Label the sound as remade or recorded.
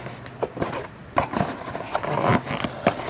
recorded